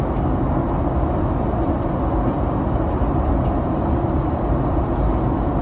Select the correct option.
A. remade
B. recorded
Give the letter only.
B